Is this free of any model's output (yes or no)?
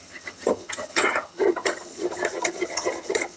no